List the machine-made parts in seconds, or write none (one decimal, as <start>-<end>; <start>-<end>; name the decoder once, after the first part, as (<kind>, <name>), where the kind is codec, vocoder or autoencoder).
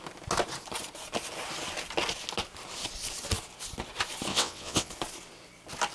4.3-4.9 (vocoder, WaveNeXt)